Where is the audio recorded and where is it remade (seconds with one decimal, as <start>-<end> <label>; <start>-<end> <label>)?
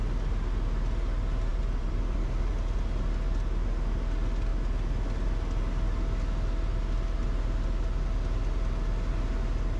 0.0-1.5 recorded; 1.5-2.5 remade; 2.5-9.8 recorded